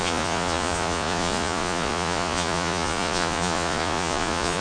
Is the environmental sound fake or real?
fake